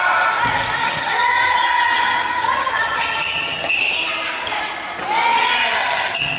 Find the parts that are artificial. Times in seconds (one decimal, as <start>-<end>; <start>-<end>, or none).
0.8-3.8; 5.3-6.4